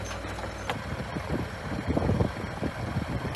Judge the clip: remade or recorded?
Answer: recorded